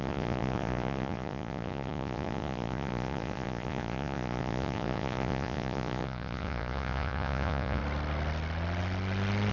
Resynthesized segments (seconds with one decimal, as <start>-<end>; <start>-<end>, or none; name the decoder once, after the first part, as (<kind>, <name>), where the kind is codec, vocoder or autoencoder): 0.0-7.8 (vocoder, Vocos)